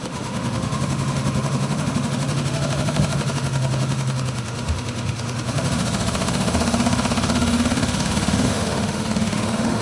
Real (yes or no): no